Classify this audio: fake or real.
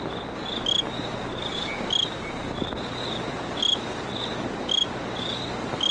real